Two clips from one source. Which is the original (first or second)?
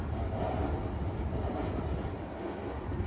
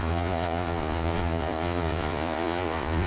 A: first